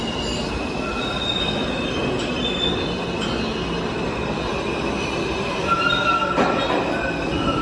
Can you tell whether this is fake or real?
real